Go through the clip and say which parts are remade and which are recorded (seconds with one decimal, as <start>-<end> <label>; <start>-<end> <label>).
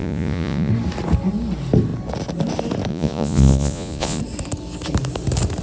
0.0-0.7 remade; 0.7-2.9 recorded; 2.9-4.2 remade; 4.2-5.6 recorded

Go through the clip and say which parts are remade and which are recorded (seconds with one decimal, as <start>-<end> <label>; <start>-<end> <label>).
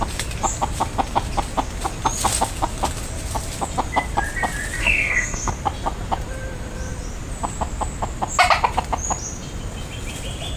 0.0-4.8 recorded; 4.8-5.5 remade; 5.5-10.6 recorded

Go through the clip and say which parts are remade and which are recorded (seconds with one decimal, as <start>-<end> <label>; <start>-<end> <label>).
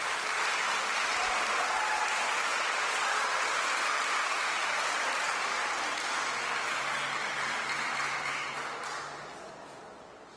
0.0-2.5 recorded; 2.5-3.3 remade; 3.3-10.4 recorded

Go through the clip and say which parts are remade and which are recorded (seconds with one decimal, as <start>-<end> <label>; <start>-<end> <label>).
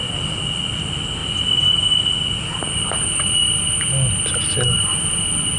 0.0-5.6 recorded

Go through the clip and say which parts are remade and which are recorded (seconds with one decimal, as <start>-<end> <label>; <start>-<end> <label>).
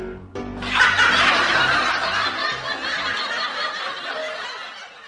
0.0-2.4 remade; 2.4-2.9 recorded; 2.9-4.2 remade; 4.2-5.1 recorded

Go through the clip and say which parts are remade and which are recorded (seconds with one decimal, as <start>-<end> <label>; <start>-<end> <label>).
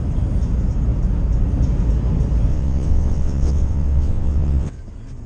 0.0-2.5 recorded; 2.5-4.8 remade; 4.8-5.3 recorded